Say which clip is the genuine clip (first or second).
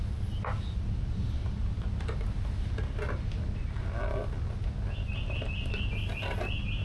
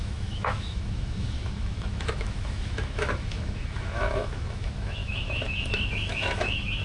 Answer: first